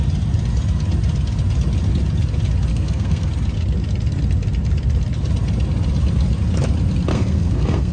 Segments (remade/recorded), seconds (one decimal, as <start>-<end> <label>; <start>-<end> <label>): 0.0-2.7 recorded; 2.7-3.3 remade; 3.3-7.1 recorded; 7.1-7.9 remade